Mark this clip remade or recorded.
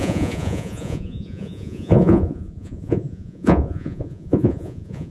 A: remade